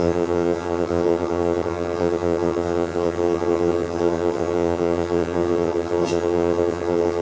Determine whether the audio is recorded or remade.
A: remade